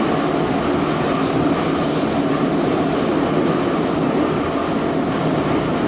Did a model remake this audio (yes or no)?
no